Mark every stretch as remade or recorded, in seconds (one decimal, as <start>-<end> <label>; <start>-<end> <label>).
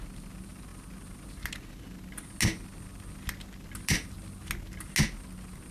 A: 0.0-5.7 recorded